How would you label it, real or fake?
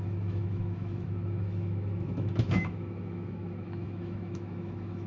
fake